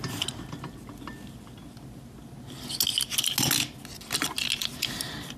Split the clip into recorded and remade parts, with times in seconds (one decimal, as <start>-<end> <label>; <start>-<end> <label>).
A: 0.0-5.4 recorded